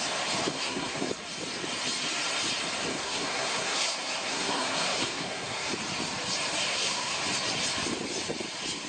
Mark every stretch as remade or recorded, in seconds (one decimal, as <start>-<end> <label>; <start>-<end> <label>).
0.0-0.5 recorded; 0.5-1.1 remade; 1.1-2.9 recorded; 2.9-5.7 remade; 5.7-6.7 recorded; 6.7-7.2 remade; 7.2-8.9 recorded